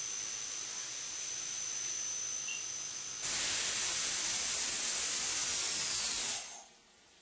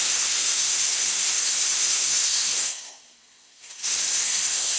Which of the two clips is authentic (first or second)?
first